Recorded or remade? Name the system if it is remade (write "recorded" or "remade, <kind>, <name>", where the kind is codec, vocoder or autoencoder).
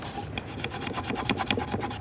recorded